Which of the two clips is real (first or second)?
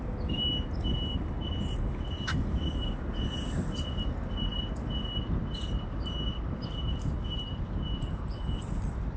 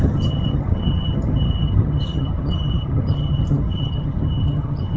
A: first